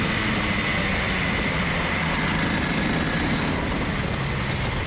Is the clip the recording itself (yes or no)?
yes